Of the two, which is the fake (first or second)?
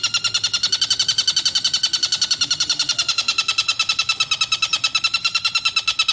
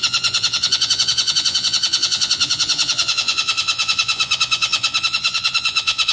second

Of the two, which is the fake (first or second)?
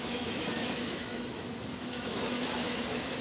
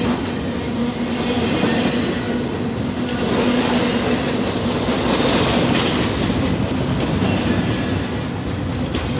first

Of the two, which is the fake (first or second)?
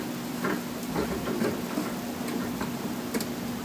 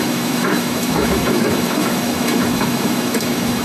second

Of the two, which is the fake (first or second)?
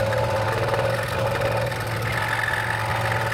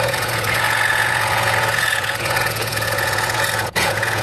second